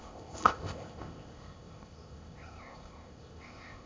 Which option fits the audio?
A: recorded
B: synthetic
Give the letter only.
B